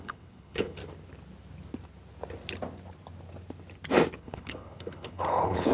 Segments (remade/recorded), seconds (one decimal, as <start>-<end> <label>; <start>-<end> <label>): 0.0-0.8 remade; 0.8-4.2 recorded; 4.2-5.7 remade